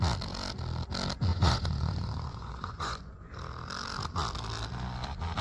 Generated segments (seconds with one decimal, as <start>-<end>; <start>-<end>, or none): 1.3-3.4